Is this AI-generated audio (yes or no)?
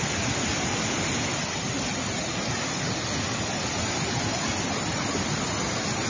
no